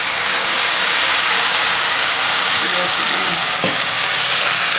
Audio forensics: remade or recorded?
remade